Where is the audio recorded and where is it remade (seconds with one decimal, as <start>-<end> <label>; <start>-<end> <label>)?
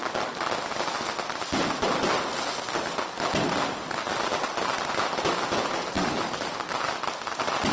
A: 0.0-5.7 recorded; 5.7-6.5 remade; 6.5-7.7 recorded